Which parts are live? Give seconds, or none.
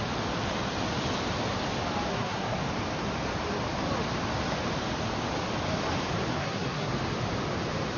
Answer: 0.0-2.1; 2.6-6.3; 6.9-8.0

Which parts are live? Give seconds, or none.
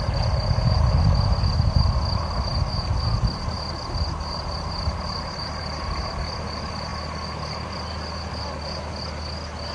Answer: 0.0-9.7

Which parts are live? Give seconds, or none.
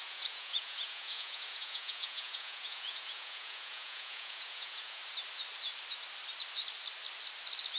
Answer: 5.0-7.8